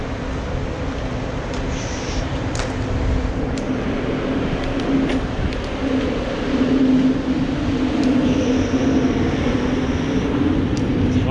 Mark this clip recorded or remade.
recorded